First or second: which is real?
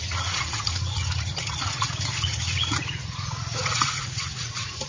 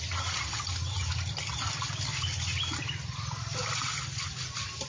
second